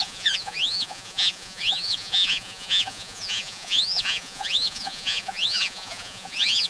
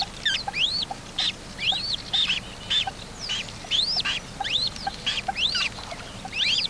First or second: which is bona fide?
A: second